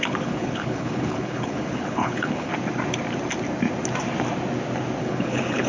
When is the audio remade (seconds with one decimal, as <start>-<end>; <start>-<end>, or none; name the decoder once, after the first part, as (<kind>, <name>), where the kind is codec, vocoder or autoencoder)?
0.0-2.5 (codec, HILCodec); 5.0-5.7